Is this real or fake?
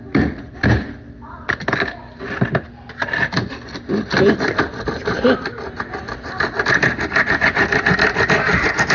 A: real